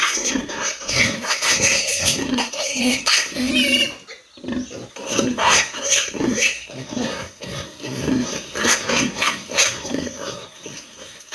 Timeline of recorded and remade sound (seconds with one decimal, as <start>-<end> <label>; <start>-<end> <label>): 0.0-3.5 remade; 3.5-4.9 recorded; 4.9-11.3 remade